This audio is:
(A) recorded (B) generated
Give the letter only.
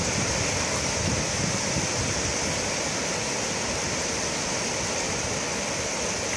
A